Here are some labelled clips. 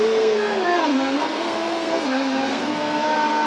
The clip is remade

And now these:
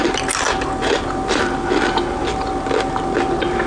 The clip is recorded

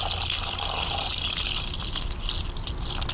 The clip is recorded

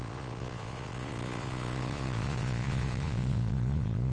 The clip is remade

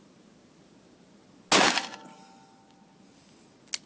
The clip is recorded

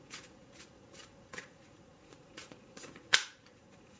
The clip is remade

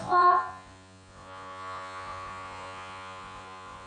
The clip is remade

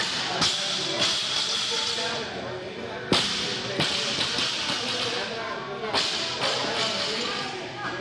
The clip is recorded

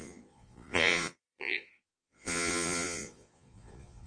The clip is remade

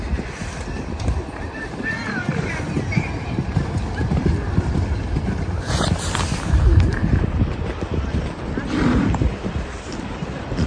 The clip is remade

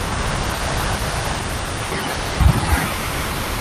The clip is recorded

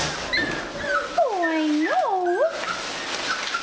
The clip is recorded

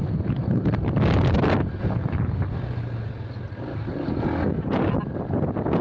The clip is recorded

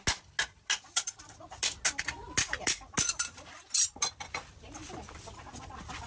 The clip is recorded